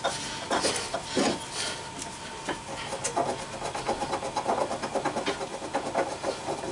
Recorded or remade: recorded